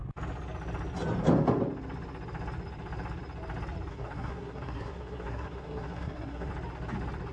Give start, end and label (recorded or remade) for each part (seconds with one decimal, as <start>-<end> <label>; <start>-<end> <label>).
0.0-3.9 recorded; 3.9-6.5 remade; 6.5-7.3 recorded